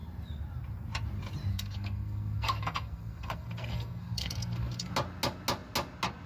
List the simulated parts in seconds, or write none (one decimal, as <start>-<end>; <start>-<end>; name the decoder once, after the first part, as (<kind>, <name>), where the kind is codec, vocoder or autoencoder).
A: 1.5-4.9 (codec, SNAC)